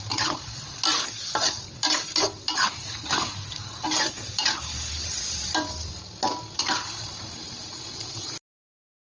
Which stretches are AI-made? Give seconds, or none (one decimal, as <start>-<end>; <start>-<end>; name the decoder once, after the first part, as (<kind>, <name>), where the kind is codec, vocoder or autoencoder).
none